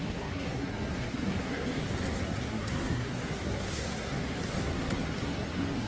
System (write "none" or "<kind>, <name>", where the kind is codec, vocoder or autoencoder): codec, SNAC